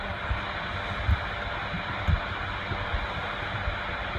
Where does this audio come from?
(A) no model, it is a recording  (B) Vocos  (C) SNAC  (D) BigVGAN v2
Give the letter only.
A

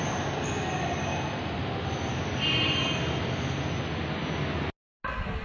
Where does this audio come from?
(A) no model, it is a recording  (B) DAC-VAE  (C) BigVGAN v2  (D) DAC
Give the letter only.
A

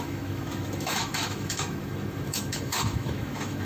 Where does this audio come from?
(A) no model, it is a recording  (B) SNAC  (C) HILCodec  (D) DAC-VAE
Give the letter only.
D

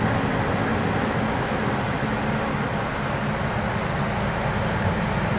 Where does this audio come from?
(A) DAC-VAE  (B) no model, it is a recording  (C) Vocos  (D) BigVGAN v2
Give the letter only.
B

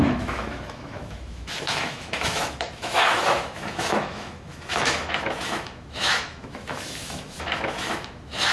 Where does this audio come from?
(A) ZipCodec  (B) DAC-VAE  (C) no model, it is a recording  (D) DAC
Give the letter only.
B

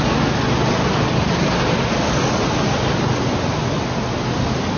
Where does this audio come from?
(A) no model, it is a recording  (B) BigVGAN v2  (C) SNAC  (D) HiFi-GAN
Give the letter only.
A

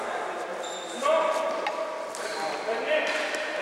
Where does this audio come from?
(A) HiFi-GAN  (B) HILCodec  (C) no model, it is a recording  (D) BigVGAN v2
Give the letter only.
C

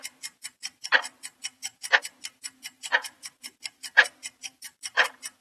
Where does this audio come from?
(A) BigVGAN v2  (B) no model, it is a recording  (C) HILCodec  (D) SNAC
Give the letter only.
A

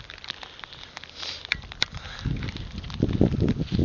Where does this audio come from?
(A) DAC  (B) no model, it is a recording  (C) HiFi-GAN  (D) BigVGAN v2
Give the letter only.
B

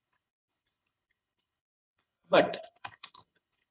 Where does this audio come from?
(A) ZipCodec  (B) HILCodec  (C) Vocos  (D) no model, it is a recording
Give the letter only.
B